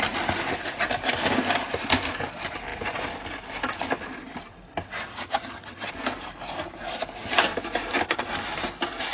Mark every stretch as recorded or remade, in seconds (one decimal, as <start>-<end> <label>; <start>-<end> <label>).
0.0-5.1 recorded; 5.1-5.9 remade; 5.9-9.1 recorded